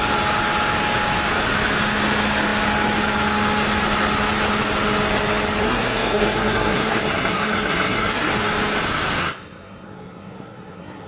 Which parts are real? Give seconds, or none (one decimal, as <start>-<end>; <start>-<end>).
0.0-5.6; 8.3-9.2

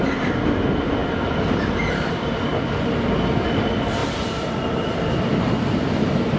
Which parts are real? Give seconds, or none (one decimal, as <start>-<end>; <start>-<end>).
0.0-1.0; 2.2-4.0; 5.1-6.4

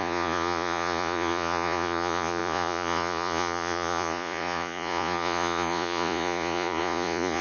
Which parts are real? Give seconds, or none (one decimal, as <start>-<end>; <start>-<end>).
none

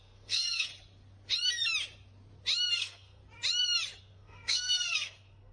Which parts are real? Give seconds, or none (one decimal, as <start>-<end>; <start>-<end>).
0.7-2.7; 3.2-4.0

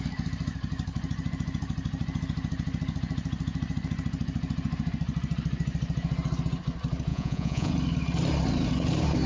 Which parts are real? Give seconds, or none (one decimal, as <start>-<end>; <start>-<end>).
0.0-7.1; 7.7-9.3

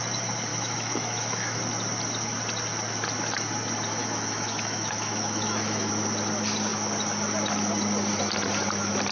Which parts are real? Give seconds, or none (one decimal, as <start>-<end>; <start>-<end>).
0.0-0.5; 1.6-4.0; 5.9-9.1

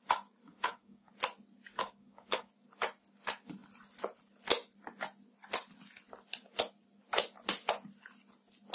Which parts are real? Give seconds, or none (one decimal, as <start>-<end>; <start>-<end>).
0.0-0.5; 1.1-1.7; 2.5-8.7

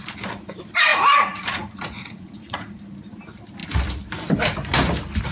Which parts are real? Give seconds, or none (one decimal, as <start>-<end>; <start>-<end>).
0.0-0.9; 2.8-5.3